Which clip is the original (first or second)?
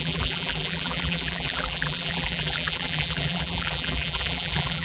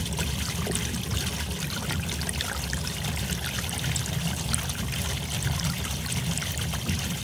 second